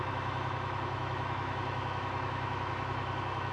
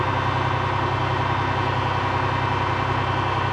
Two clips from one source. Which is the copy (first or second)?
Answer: first